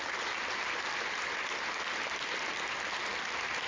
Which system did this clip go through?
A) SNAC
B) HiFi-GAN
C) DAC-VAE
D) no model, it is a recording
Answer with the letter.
D